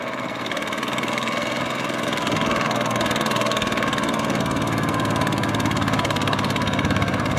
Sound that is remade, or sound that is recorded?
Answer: remade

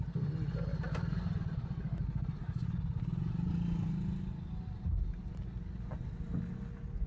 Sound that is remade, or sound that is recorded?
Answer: recorded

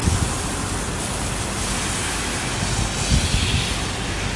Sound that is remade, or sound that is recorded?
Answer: recorded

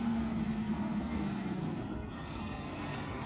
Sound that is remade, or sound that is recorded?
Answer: remade